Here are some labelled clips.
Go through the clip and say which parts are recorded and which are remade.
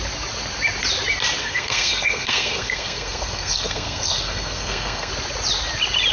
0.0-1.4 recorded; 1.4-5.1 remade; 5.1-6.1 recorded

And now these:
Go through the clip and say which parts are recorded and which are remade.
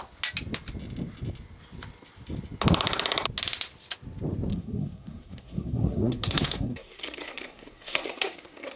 0.0-4.5 recorded; 4.5-8.8 remade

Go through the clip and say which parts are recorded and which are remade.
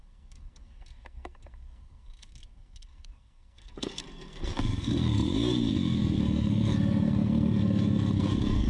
0.0-8.7 remade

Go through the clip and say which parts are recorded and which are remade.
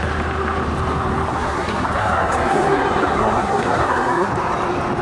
0.0-1.3 recorded; 1.3-4.3 remade; 4.3-5.0 recorded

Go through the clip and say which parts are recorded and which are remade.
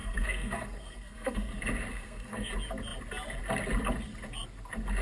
0.0-1.5 remade; 1.5-1.9 recorded; 1.9-2.5 remade; 2.5-5.0 recorded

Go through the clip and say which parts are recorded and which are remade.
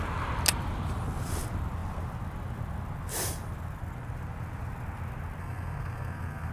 0.0-5.4 recorded; 5.4-6.5 remade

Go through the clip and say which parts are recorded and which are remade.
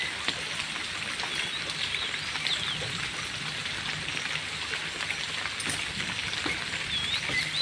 0.0-7.6 recorded